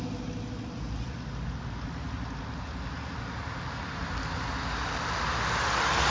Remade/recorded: recorded